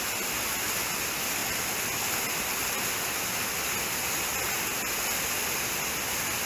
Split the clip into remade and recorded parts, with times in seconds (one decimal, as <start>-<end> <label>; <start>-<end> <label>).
0.0-6.5 recorded